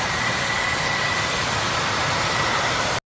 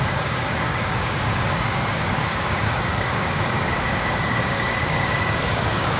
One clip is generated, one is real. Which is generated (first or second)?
second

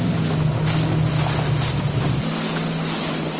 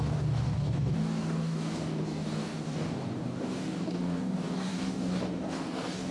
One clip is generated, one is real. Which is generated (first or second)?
second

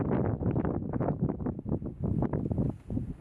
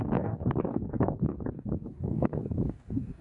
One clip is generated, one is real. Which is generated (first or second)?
second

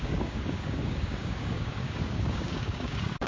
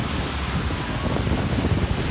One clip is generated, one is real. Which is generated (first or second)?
first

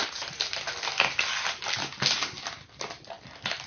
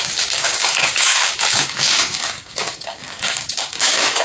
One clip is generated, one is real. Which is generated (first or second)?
second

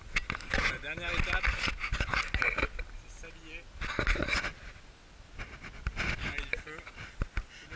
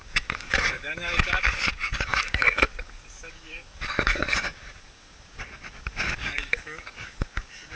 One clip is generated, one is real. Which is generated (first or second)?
second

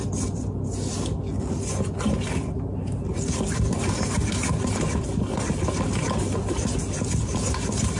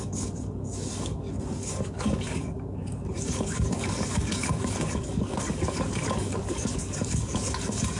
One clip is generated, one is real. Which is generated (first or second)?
second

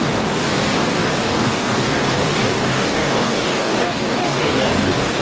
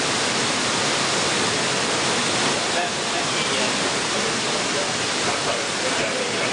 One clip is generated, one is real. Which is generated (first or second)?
first